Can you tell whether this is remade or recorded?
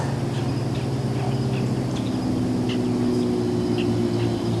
recorded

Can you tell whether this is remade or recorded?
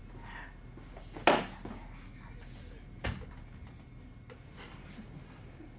recorded